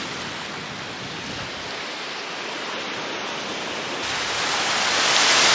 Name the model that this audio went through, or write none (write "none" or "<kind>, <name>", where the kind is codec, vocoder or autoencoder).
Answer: none